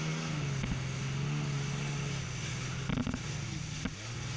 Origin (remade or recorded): recorded